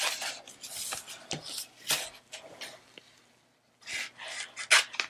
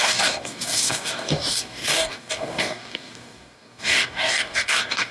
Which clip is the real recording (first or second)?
first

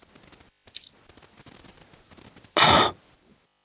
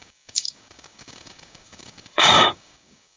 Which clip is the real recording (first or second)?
first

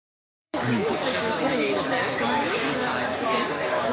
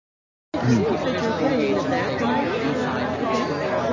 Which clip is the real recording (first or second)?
second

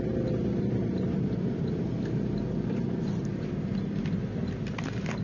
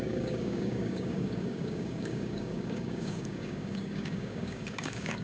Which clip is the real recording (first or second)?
first